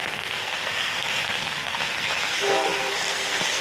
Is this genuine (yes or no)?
no